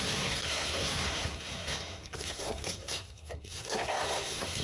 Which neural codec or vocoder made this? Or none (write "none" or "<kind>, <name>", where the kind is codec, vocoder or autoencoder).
codec, SNAC